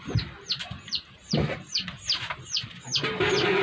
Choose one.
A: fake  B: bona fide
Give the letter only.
B